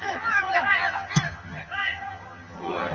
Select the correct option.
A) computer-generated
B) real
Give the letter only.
A